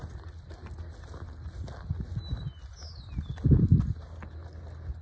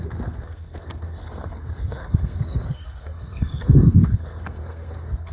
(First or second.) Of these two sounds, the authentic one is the first